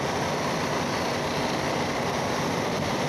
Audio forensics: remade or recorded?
recorded